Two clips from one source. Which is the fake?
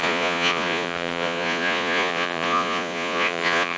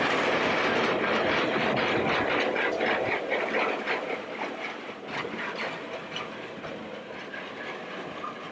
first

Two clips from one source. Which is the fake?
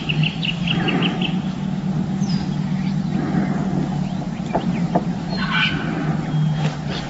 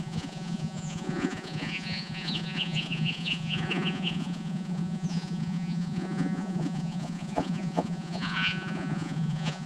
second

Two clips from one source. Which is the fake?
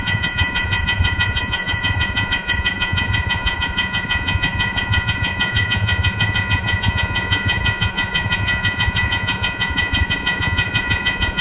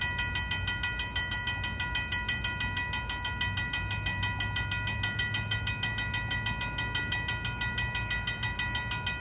first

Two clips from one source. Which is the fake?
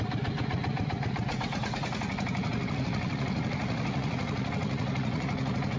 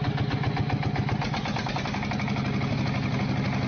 first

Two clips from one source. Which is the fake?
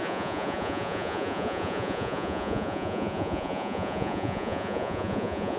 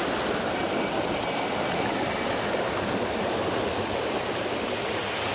first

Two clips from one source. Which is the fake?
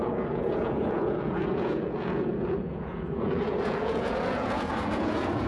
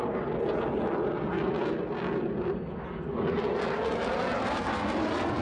first